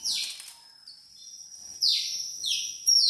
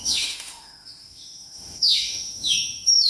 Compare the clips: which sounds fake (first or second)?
second